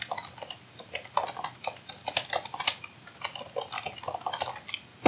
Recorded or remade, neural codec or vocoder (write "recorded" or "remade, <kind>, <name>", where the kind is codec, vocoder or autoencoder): recorded